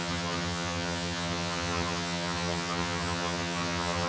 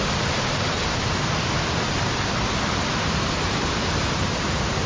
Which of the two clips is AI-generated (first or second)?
first